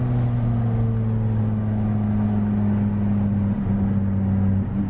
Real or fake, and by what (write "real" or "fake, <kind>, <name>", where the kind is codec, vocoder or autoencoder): real